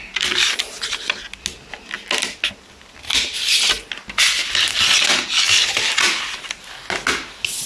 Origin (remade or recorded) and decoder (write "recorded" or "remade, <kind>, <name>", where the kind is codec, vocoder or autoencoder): recorded